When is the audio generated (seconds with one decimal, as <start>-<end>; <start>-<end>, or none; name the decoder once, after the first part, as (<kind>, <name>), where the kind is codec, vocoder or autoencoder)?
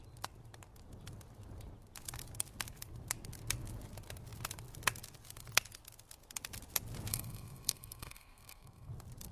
7.1-8.9 (codec, SNAC)